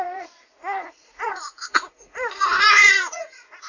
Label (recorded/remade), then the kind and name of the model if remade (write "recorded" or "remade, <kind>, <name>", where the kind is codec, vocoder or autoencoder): remade, vocoder, Vocos